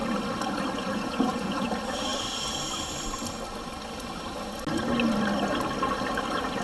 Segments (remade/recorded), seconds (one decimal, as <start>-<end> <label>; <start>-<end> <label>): 0.0-0.9 recorded; 0.9-1.7 remade; 1.7-6.6 recorded